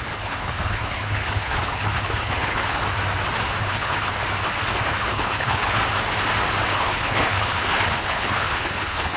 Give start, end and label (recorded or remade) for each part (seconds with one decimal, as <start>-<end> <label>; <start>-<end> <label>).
0.0-2.8 remade; 2.8-3.6 recorded; 3.6-4.1 remade; 4.1-4.7 recorded; 4.7-5.8 remade; 5.8-6.7 recorded; 6.7-9.2 remade